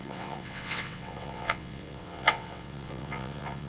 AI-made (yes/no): yes